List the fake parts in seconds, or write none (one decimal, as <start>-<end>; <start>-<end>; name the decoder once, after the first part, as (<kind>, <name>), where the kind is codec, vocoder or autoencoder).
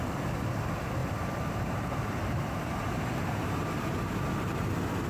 1.0-4.0 (vocoder, BigVGAN v2)